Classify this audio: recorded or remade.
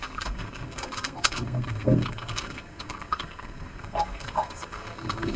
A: remade